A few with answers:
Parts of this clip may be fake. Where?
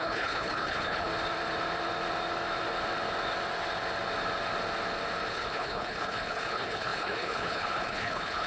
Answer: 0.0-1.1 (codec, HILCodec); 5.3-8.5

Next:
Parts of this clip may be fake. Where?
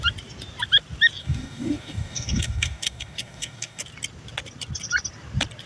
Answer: 1.2-3.8 (codec, DAC)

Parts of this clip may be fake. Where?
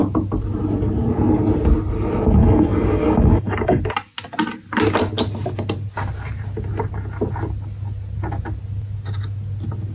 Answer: 2.4-3.8 (codec, DAC)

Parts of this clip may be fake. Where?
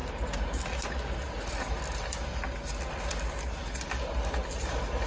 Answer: none